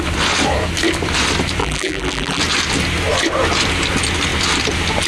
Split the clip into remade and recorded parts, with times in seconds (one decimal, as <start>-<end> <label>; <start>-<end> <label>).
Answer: 0.0-1.6 recorded; 1.6-2.4 remade; 2.4-5.1 recorded